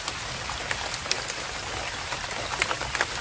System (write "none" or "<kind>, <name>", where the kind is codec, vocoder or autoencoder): none